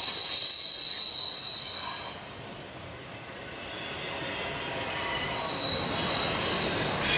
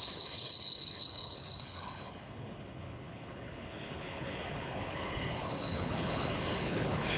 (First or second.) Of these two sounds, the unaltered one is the first